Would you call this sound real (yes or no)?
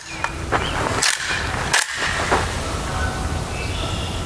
yes